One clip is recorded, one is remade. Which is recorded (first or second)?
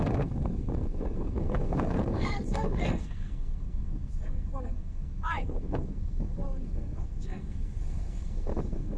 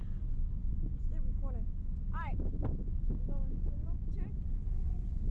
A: second